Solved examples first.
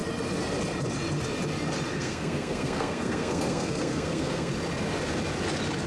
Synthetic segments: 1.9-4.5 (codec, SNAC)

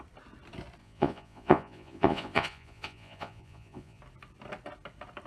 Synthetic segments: 0.8-4.0 (vocoder, Vocos)

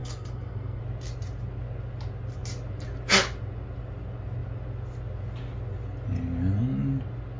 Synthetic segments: 0.0-0.8 (codec, SNAC)